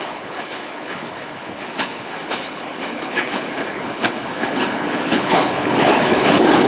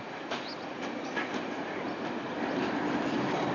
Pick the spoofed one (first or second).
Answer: first